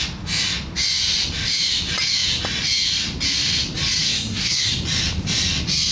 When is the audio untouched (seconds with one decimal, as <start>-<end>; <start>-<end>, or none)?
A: 0.0-4.0; 4.7-5.9